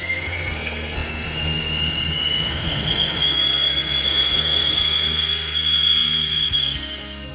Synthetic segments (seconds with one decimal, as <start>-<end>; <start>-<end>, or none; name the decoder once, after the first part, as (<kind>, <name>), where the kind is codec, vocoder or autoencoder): 0.0-7.3 (codec, SNAC)